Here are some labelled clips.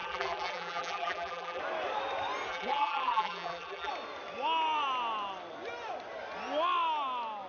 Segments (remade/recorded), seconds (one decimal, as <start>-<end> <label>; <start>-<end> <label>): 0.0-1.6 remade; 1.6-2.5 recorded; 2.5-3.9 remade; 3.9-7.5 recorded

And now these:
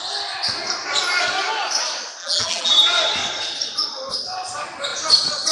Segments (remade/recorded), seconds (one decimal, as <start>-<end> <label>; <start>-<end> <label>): 0.0-2.2 recorded; 2.2-2.7 remade; 2.7-5.5 recorded

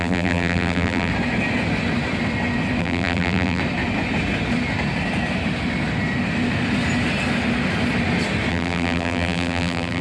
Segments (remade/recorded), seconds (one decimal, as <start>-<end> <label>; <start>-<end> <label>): 0.0-1.1 remade; 1.1-2.8 recorded; 2.8-3.6 remade; 3.6-8.5 recorded; 8.5-10.0 remade

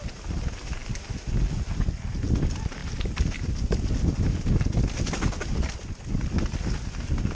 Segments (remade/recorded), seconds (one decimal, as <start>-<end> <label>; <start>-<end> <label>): 0.0-7.3 recorded

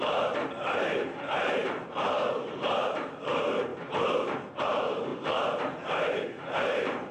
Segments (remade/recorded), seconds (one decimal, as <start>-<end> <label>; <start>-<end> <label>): 0.0-3.7 remade; 3.7-4.6 recorded; 4.6-7.1 remade

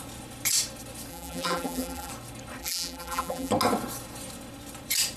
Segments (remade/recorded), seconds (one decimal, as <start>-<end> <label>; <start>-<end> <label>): 0.0-1.1 recorded; 1.1-2.1 remade; 2.1-2.6 recorded; 2.6-3.5 remade; 3.5-5.2 recorded

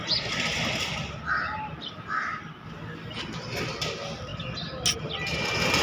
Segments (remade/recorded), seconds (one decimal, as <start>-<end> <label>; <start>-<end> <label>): 0.0-2.2 remade; 2.2-5.8 recorded